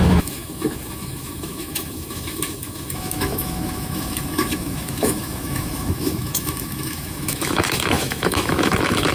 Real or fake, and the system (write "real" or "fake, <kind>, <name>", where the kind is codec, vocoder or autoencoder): fake, autoencoder, DAC-VAE